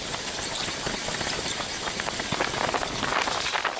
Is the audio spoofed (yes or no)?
no